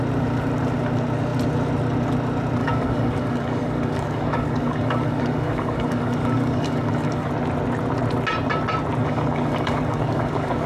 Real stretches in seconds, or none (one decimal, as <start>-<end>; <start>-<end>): 0.0-2.6; 7.3-9.0